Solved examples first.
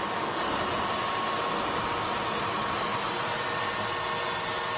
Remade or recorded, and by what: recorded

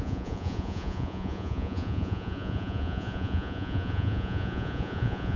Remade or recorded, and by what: remade, vocoder, Vocos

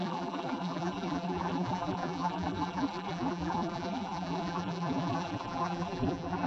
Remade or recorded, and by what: remade, vocoder, BigVGAN v2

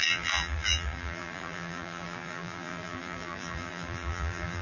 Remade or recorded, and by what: remade, vocoder, BigVGAN v2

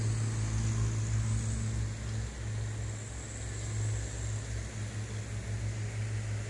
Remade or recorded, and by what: recorded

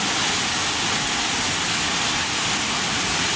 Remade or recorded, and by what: recorded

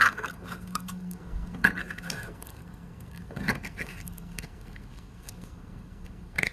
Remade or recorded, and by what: remade, codec, SNAC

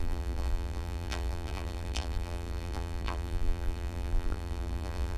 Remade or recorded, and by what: remade, vocoder, BigVGAN v2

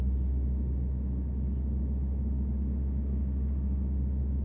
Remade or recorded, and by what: recorded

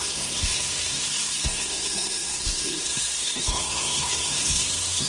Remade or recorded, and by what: remade, codec, SNAC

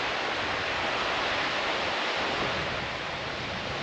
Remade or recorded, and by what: recorded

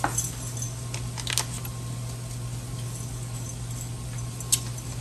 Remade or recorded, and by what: recorded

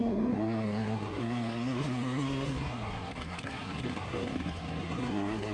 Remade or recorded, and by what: remade, codec, SNAC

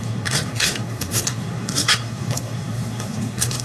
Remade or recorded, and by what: remade, codec, SNAC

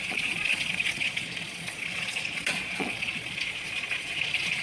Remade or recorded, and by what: remade, vocoder, Vocos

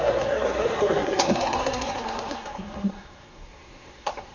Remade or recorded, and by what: remade, codec, SNAC